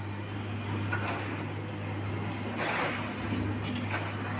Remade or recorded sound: recorded